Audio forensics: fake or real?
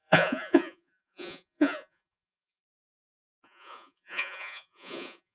fake